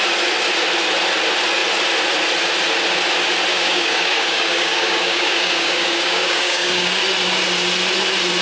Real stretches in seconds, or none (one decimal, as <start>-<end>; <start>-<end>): 0.0-3.5; 7.0-8.4

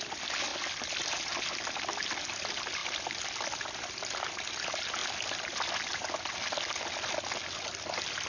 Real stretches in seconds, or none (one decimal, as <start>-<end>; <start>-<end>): 0.0-8.3